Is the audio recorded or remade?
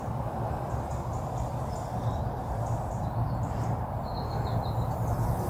recorded